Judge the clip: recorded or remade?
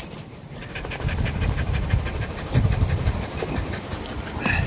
remade